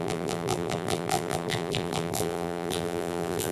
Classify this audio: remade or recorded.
remade